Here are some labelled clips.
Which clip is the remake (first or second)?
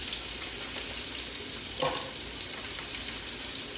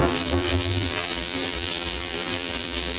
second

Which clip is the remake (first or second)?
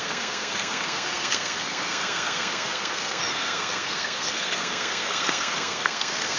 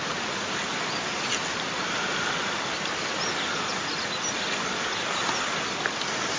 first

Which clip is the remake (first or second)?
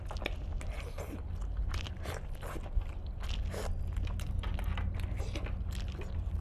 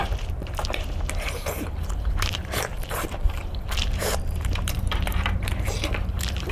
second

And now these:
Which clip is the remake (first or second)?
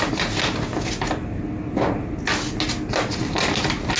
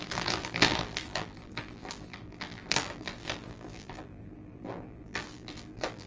second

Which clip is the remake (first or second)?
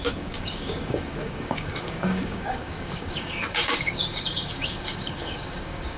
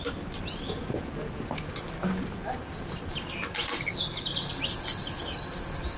first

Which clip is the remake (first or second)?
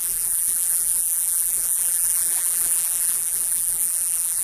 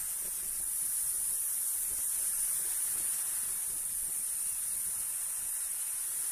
first